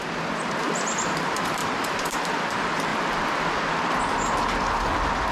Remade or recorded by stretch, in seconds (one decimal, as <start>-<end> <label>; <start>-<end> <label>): 0.0-1.6 recorded; 1.6-2.2 remade; 2.2-5.3 recorded